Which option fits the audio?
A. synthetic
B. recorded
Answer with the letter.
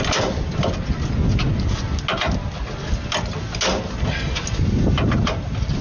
B